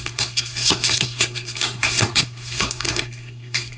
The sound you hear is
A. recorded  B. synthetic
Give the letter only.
B